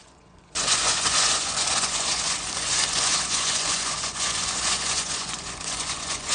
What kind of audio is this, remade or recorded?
remade